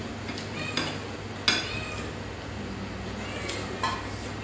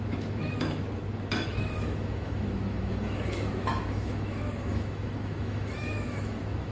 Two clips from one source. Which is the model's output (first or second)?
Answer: second